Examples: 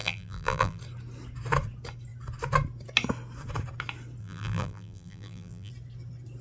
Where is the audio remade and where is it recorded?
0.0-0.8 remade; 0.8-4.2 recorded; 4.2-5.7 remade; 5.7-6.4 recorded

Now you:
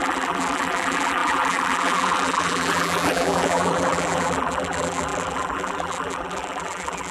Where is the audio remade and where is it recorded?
0.0-7.1 remade

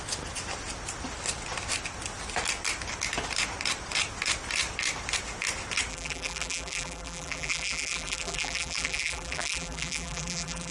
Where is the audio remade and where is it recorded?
0.0-5.9 recorded; 5.9-10.7 remade

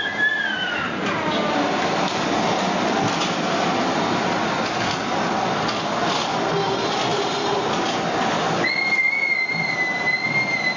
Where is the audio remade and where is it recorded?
0.0-3.7 recorded; 3.7-4.3 remade; 4.3-7.1 recorded; 7.1-7.7 remade; 7.7-10.8 recorded

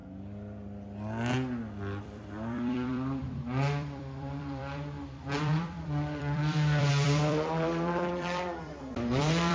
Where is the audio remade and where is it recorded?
0.0-2.0 recorded; 2.0-9.5 remade